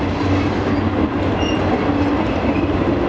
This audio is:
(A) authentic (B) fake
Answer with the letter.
A